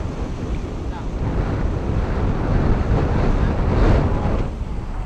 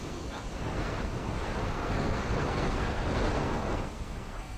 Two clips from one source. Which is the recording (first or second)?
first